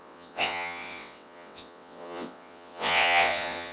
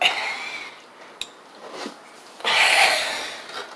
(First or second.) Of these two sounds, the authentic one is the second